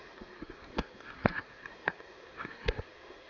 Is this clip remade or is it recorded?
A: remade